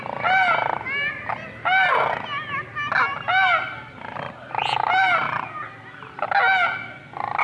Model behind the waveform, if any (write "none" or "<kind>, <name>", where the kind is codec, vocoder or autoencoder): none